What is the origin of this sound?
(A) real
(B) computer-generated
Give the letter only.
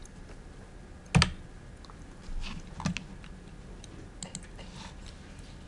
A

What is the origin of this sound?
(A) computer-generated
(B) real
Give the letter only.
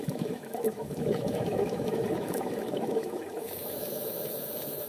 A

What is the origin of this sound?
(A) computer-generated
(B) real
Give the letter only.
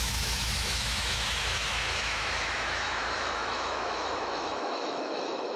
A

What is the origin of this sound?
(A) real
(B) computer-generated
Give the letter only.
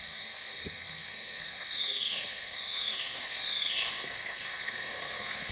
B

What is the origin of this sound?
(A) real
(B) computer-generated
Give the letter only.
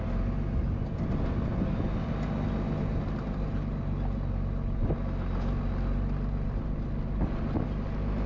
A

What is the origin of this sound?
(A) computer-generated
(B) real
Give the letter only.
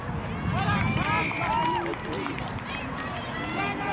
B